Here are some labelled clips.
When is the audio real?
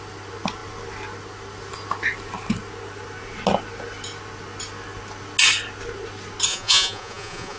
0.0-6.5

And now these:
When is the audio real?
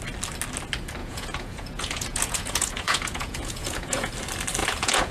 0.0-1.0; 4.1-4.6